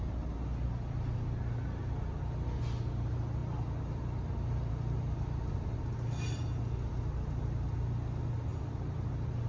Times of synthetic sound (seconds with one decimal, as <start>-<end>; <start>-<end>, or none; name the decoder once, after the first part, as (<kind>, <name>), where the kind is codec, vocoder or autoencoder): none